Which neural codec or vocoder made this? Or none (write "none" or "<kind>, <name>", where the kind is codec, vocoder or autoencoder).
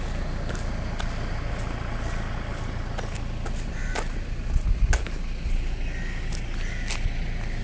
none